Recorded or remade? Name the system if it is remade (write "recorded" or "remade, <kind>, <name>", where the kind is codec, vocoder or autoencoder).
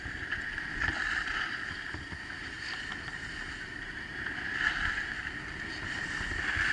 recorded